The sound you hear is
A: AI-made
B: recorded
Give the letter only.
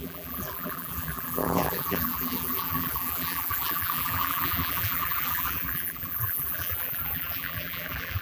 A